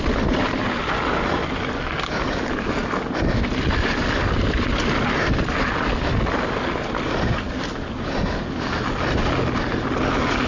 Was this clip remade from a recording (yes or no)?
no